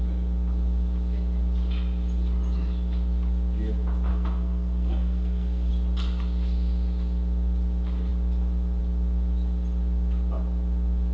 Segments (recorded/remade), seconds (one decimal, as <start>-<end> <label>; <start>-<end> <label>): 0.0-4.1 recorded; 4.1-5.7 remade; 5.7-11.1 recorded